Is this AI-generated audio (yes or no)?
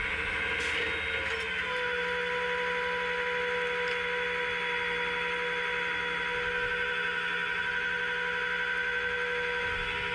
no